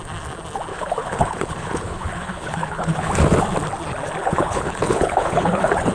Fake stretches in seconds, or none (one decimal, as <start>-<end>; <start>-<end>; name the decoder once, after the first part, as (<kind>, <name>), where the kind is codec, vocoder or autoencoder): 0.7-3.1 (codec, HILCodec); 4.2-5.9